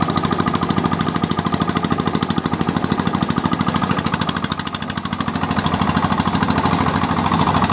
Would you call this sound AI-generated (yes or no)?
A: no